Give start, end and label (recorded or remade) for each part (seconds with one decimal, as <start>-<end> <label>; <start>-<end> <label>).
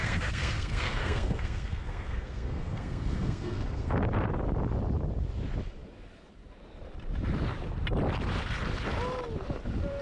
0.0-3.9 remade; 3.9-10.0 recorded